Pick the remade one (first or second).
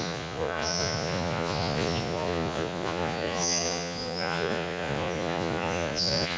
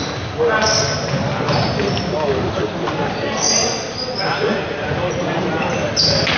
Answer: first